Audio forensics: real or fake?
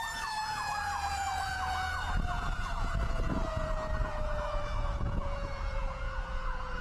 fake